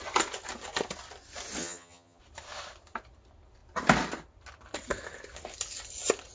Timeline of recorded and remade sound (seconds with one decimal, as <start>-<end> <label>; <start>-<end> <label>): 0.0-1.6 recorded; 1.6-2.2 remade; 2.2-6.3 recorded